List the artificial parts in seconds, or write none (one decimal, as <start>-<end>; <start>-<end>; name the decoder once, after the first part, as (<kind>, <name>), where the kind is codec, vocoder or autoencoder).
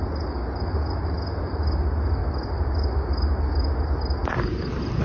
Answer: none